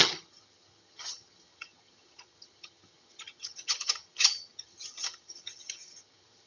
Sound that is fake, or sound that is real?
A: fake